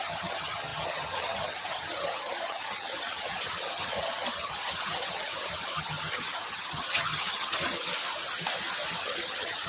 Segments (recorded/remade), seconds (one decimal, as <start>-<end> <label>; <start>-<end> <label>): 0.0-7.8 remade; 7.8-9.0 recorded; 9.0-9.7 remade